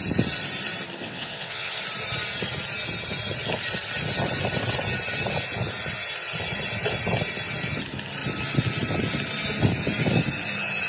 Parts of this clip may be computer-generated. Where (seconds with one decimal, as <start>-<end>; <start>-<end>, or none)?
1.0-1.8